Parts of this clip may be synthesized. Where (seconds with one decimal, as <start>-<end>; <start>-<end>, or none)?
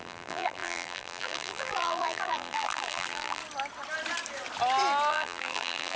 0.0-3.4; 5.1-6.0